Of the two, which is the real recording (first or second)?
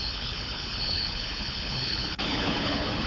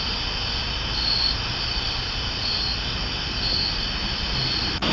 second